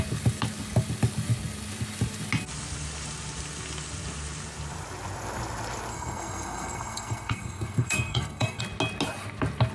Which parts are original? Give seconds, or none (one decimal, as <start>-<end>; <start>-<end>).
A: 0.0-5.9; 8.6-9.7